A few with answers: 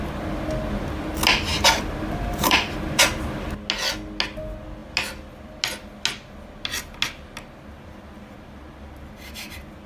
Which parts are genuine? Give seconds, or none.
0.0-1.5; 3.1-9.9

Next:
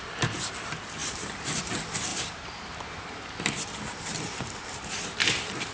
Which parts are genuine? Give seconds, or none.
0.0-1.0; 1.6-2.1; 3.6-4.1; 4.8-5.7

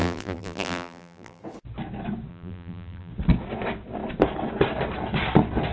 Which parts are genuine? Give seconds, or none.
1.4-2.3; 3.1-5.7

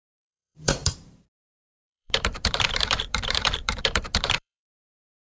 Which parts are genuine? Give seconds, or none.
none

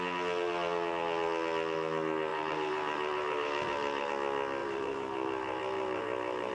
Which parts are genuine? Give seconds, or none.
0.0-2.3; 4.1-4.6